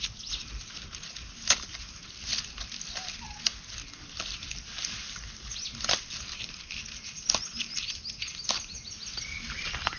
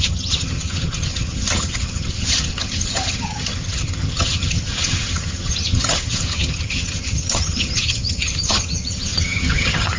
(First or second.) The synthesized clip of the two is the second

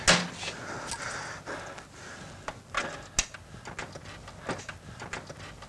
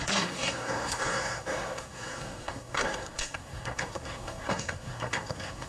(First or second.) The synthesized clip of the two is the second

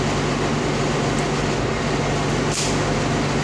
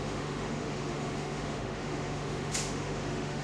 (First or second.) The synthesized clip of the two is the second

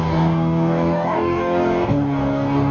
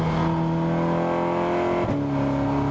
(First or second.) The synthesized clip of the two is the first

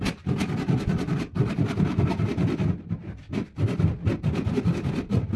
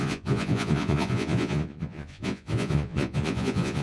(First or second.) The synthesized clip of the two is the second